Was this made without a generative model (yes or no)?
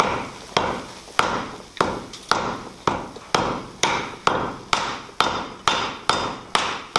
yes